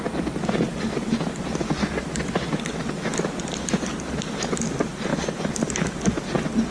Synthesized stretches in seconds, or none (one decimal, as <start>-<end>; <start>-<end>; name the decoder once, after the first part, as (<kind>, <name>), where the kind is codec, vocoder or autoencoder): none